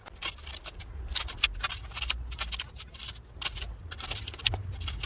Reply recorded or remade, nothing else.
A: recorded